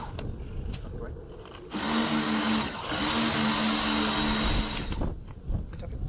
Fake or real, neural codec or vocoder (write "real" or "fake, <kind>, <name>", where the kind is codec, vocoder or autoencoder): real